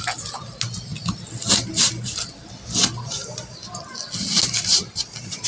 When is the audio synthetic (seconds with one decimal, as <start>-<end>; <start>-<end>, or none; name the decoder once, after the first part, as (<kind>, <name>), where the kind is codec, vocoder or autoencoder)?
none